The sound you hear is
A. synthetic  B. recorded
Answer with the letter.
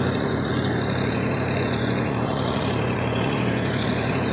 A